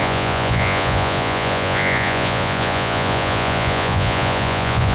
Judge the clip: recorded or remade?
remade